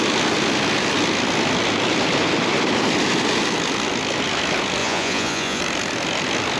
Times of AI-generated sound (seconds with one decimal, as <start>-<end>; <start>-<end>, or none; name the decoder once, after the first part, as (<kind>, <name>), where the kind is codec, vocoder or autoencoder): 4.8-5.6 (vocoder, Vocos)